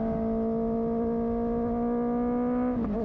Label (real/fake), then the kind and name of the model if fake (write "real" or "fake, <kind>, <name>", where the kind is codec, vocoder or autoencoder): real